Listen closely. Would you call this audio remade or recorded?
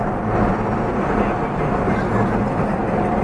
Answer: recorded